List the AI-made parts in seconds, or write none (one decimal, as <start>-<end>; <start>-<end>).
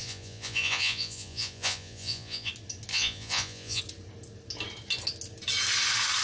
0.0-2.5; 2.9-3.8